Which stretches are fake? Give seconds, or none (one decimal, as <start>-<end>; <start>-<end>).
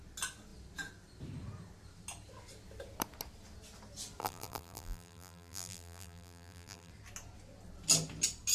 4.2-6.9